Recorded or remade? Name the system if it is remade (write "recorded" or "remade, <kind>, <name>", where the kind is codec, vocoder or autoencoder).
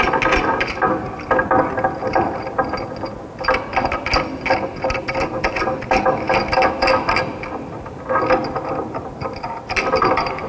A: recorded